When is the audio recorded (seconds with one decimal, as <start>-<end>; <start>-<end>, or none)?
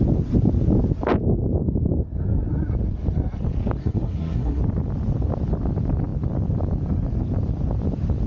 0.0-3.8; 4.6-8.3